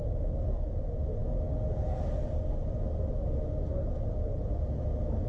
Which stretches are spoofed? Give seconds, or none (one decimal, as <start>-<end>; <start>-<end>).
none